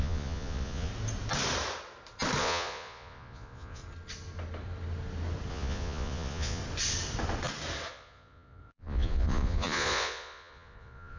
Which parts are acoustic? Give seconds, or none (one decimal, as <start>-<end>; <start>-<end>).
0.9-2.4; 3.8-5.5; 6.6-7.9